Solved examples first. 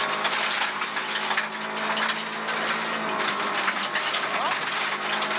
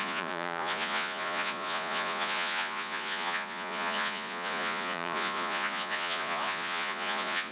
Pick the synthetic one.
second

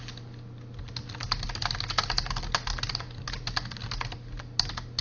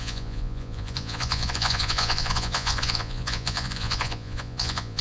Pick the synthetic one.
second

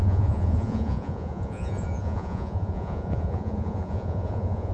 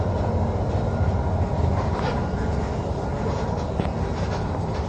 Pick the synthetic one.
first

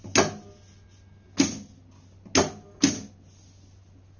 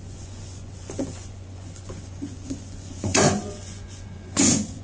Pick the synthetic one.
second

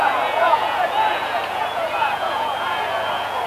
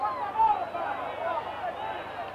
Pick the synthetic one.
first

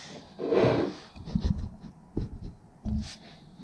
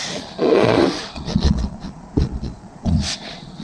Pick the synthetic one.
second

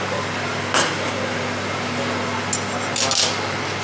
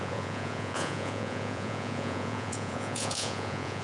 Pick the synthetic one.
second